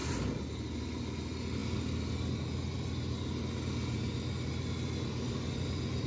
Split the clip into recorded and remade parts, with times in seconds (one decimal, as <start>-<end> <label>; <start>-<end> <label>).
0.0-6.1 recorded